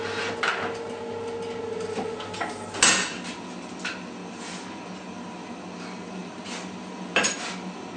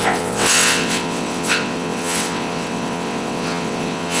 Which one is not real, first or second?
second